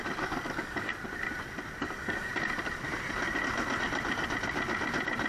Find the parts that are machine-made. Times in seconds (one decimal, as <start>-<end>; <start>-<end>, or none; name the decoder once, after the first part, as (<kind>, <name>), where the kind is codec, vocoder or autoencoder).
0.0-0.9 (codec, DAC); 1.8-2.3